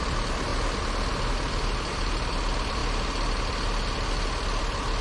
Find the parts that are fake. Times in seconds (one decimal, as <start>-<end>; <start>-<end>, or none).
0.0-0.5; 1.2-2.8; 4.6-5.0